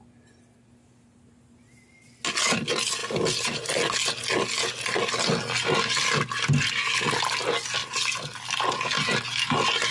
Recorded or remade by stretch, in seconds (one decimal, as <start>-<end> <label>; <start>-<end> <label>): 0.0-9.9 recorded